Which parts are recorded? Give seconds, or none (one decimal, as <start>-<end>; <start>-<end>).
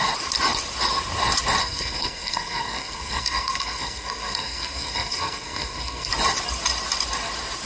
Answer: 0.0-1.6; 6.1-7.7